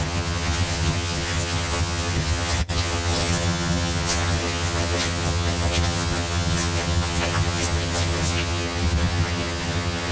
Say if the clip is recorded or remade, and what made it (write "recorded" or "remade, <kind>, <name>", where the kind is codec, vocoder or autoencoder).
remade, vocoder, HiFi-GAN